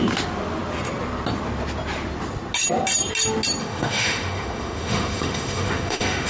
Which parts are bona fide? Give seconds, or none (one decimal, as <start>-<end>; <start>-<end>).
0.0-3.6

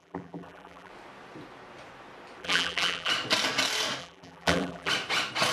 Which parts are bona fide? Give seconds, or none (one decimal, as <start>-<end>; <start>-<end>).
0.9-2.4; 3.1-4.0; 4.9-5.5